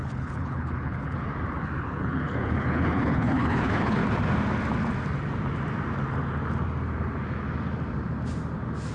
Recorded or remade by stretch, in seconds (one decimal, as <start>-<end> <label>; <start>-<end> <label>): 0.0-1.3 remade; 1.3-1.8 recorded; 1.8-4.0 remade; 4.0-8.9 recorded